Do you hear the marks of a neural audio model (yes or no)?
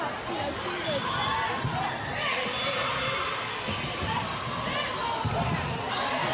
no